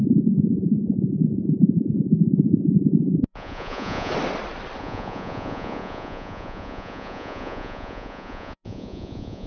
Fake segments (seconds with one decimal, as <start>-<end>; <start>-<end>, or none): 0.0-4.1; 4.8-9.5